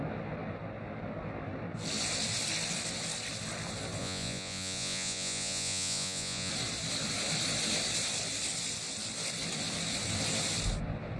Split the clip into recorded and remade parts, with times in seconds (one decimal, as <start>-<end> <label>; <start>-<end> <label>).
0.0-4.0 recorded; 4.0-6.5 remade; 6.5-11.2 recorded